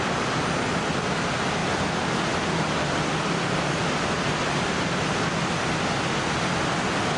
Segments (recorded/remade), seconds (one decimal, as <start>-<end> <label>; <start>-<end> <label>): 0.0-7.2 recorded